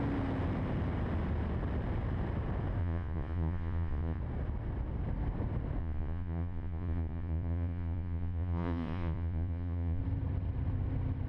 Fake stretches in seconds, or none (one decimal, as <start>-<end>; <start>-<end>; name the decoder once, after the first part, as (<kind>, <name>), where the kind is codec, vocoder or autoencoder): 2.8-4.2 (vocoder, Vocos); 5.8-10.0